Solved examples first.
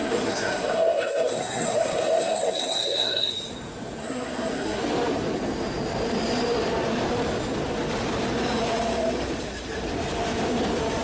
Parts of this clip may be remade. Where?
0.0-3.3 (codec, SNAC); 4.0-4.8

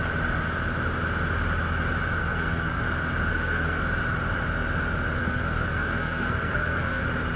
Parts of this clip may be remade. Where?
2.2-2.8 (codec, SNAC); 3.3-3.8; 5.2-7.0

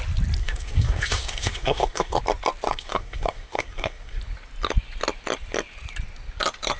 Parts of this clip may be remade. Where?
0.4-2.2 (codec, SNAC); 2.7-4.2

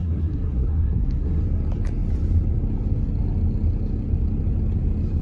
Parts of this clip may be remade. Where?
0.0-1.4 (codec, SNAC)